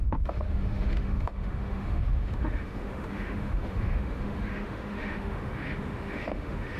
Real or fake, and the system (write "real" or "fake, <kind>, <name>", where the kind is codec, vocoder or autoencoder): fake, autoencoder, DAC-VAE